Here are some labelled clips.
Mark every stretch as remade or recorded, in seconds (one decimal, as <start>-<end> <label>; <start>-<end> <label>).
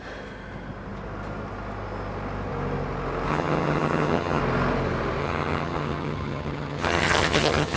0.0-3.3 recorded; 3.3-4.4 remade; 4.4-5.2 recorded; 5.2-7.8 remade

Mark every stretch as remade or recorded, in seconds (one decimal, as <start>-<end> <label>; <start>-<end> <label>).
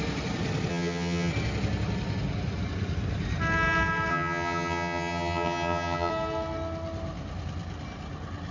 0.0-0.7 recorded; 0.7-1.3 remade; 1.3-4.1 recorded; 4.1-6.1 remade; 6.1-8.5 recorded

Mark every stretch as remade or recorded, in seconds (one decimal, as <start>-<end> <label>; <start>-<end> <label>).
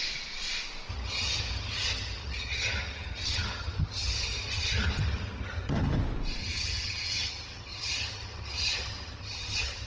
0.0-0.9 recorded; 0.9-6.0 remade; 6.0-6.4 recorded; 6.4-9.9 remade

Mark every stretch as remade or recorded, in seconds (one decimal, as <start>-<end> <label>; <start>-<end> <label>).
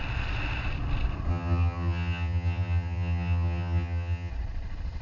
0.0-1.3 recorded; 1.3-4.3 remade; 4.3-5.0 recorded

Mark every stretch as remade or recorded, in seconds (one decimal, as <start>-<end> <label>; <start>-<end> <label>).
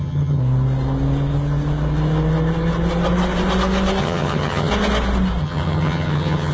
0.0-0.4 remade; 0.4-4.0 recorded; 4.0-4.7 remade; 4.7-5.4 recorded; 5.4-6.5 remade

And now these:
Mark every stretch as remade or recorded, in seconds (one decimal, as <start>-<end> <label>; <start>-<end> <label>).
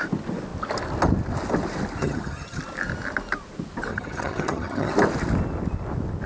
0.0-2.0 recorded; 2.0-2.6 remade; 2.6-3.9 recorded; 3.9-4.9 remade; 4.9-6.3 recorded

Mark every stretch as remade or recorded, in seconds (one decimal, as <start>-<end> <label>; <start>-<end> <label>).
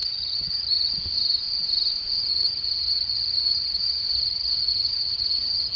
0.0-0.9 remade; 0.9-2.2 recorded; 2.2-5.8 remade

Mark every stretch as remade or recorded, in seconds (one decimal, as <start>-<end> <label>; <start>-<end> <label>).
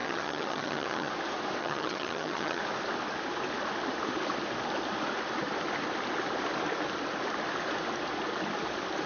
0.0-1.1 remade; 1.1-1.6 recorded; 1.6-2.6 remade; 2.6-9.1 recorded